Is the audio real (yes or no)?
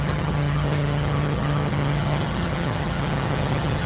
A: no